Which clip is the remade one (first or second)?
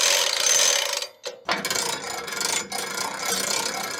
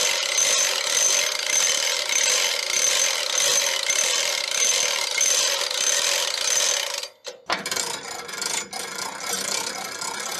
second